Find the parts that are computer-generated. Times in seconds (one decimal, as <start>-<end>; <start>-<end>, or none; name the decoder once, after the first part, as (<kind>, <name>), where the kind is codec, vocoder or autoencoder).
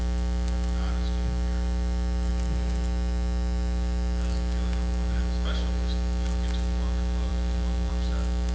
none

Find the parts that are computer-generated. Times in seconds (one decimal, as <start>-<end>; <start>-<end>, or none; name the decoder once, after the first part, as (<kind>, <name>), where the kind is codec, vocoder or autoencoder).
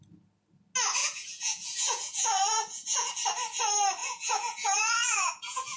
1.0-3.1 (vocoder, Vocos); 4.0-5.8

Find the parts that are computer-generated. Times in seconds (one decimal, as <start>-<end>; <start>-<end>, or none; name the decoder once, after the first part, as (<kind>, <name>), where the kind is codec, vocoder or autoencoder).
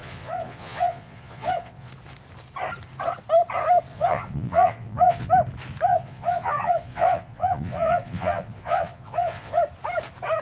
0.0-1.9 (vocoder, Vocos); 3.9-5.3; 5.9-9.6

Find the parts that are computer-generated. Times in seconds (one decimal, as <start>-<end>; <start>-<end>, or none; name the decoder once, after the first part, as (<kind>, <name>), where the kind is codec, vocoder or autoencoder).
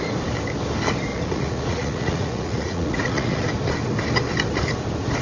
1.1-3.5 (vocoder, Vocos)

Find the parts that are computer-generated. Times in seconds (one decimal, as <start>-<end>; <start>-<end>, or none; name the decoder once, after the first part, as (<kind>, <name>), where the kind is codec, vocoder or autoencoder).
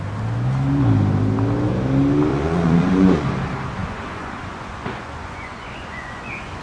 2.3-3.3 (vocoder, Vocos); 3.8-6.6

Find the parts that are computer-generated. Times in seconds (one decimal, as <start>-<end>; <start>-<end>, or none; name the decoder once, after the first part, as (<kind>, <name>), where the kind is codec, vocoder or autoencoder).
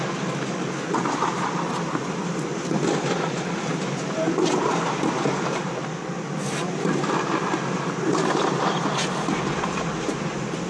none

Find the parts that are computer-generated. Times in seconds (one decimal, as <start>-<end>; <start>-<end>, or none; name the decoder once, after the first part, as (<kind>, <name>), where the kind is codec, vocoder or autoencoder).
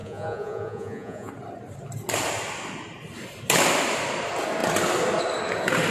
0.0-1.3 (vocoder, Vocos)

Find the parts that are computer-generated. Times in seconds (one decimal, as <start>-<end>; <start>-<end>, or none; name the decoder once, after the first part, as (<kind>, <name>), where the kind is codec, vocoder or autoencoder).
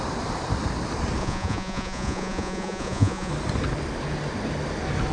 1.2-3.3 (vocoder, Vocos)